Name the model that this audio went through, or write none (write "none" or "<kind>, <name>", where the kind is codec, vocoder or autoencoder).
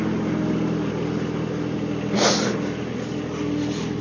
none